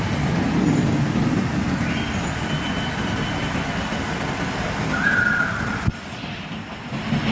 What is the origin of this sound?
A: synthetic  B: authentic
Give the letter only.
B